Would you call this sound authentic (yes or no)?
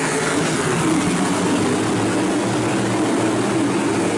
yes